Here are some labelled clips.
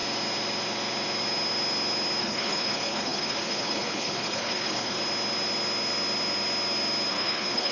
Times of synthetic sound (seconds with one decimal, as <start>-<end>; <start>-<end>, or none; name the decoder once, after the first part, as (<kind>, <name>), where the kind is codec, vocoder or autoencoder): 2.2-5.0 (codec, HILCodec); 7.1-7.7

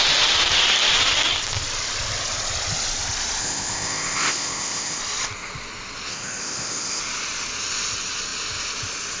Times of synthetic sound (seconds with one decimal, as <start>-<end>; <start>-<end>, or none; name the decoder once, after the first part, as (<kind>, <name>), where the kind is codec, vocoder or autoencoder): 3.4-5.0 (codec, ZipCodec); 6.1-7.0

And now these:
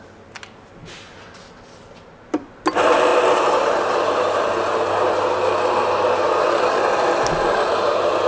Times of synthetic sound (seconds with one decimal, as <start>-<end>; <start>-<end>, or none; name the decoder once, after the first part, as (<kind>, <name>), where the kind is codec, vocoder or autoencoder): none

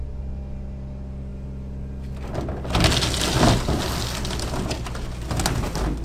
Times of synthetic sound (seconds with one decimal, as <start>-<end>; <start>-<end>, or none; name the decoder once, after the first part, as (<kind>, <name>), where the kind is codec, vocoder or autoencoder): none

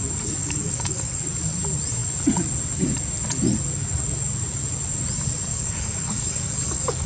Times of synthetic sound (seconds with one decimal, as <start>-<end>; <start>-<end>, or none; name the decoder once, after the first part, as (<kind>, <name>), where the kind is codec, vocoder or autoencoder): 0.4-1.2 (codec, DAC); 5.5-7.1